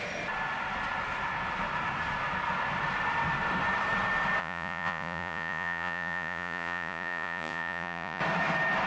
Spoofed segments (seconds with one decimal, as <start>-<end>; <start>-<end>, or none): 4.4-8.2